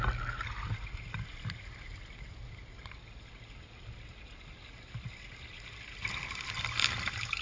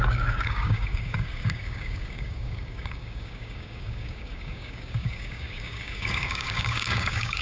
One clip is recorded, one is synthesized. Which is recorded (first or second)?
first